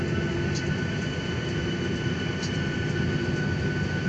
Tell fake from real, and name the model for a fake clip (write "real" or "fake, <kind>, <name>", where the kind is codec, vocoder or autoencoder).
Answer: real